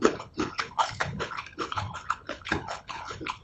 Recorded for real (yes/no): no